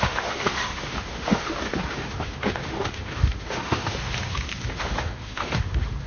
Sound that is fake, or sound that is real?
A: fake